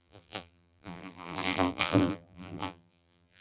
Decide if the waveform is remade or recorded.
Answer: remade